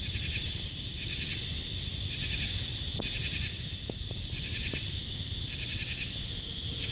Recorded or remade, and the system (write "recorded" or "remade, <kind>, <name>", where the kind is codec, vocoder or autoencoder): recorded